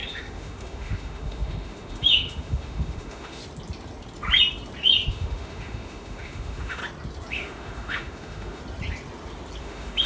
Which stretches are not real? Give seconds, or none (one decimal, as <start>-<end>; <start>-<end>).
0.0-3.4; 5.1-6.8; 7.3-8.6; 9.6-10.1